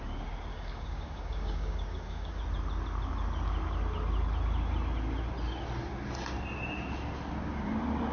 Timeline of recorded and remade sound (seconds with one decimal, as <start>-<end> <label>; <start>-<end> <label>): 0.0-0.5 recorded; 0.5-2.4 remade; 2.4-8.1 recorded